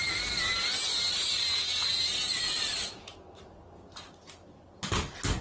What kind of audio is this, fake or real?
real